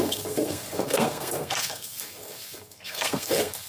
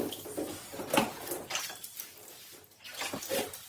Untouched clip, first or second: second